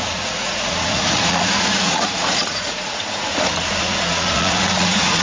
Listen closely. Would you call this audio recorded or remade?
remade